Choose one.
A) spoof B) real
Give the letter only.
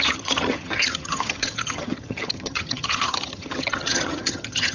A